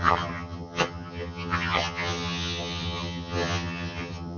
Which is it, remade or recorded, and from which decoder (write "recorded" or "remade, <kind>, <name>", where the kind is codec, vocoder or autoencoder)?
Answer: remade, vocoder, HiFi-GAN